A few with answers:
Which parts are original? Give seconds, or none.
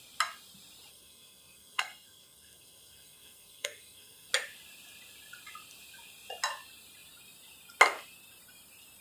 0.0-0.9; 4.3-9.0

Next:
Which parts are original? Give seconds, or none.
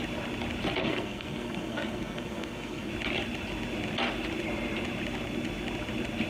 0.0-0.8; 2.9-6.3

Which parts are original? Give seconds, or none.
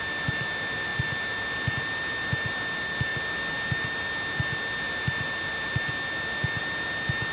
0.0-7.3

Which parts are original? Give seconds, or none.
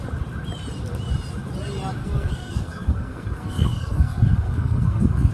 0.0-2.0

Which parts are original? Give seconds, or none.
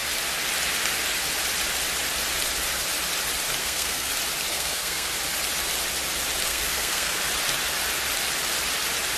0.0-3.6; 4.1-4.5; 5.1-6.5; 7.2-9.2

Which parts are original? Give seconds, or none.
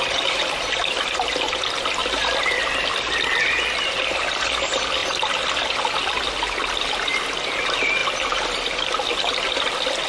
0.0-10.1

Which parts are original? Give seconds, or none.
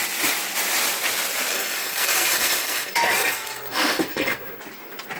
0.0-1.5; 4.6-5.2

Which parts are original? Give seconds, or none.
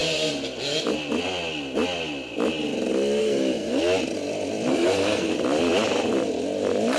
0.0-3.2; 3.8-4.7; 5.3-7.0